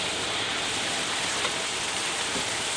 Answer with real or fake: fake